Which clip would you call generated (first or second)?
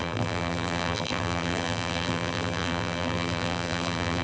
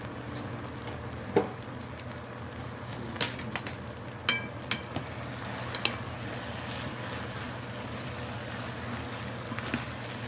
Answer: first